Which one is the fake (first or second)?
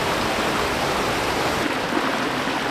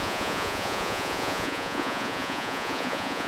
second